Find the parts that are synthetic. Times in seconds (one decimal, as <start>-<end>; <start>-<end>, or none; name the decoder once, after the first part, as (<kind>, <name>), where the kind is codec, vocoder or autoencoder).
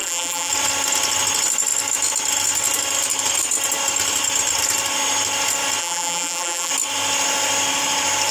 0.0-0.5 (vocoder, BigVGAN v2); 5.8-6.7